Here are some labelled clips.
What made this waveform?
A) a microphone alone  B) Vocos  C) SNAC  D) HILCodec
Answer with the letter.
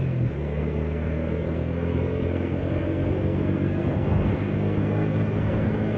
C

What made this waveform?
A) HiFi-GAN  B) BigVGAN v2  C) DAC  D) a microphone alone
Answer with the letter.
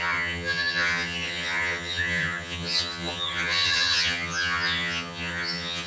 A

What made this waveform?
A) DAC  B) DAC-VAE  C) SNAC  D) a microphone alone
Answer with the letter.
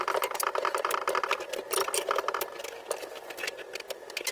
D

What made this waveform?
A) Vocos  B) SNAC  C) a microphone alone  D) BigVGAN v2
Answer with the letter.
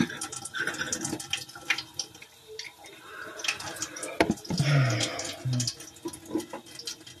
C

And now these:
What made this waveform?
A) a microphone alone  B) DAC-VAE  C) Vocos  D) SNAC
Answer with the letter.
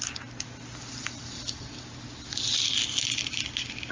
A